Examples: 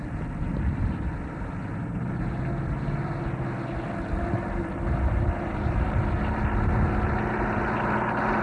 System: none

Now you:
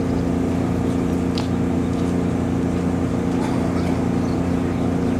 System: none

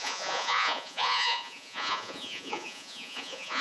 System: vocoder, Vocos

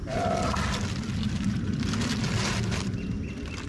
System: none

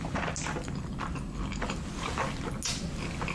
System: none